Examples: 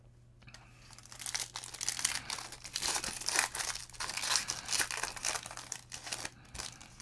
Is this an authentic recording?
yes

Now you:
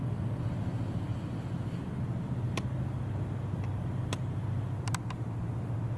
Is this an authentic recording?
yes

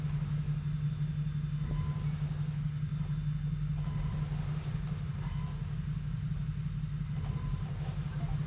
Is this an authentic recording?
yes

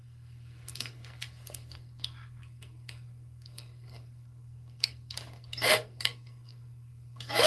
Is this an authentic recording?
no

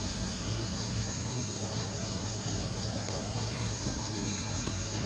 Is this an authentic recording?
no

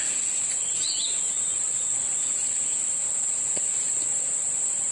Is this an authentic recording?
yes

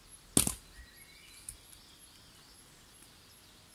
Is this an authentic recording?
yes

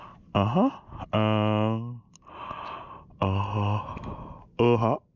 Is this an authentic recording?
yes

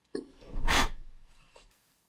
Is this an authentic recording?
no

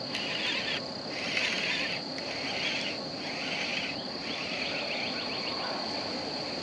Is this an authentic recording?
yes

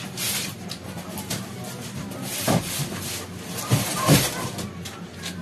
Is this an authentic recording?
yes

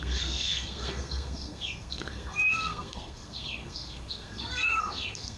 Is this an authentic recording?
no